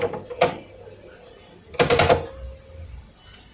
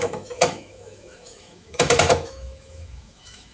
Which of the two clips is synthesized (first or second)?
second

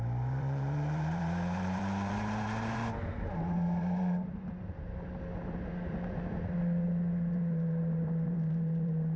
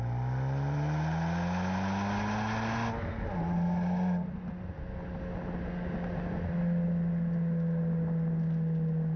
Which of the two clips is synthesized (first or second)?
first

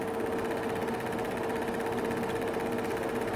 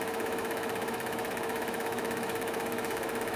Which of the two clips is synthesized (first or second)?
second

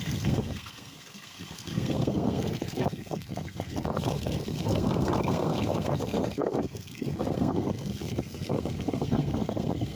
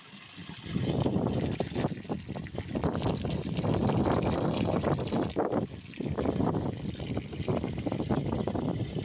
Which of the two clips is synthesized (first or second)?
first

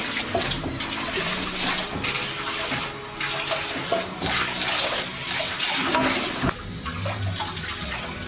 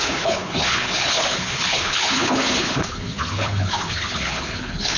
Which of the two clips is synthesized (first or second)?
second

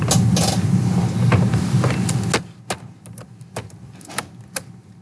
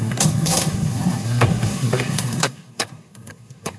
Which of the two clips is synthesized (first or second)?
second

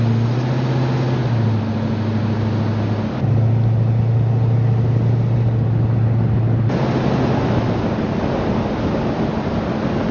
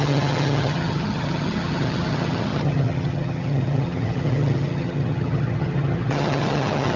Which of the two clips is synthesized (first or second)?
second